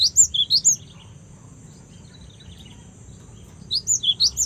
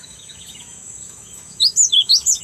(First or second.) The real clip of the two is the first